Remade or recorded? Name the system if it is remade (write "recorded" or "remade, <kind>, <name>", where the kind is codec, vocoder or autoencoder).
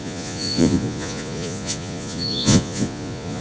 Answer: remade, vocoder, Vocos